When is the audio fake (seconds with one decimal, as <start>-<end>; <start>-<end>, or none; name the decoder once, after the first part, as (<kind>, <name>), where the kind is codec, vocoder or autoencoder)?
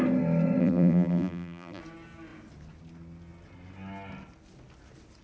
0.6-1.8 (vocoder, BigVGAN v2)